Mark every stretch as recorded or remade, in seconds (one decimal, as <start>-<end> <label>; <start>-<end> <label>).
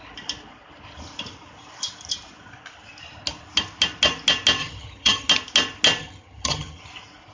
0.0-4.6 recorded; 4.6-5.3 remade; 5.3-6.0 recorded; 6.0-6.8 remade; 6.8-7.3 recorded